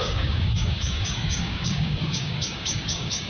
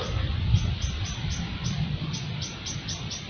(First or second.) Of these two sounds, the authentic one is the second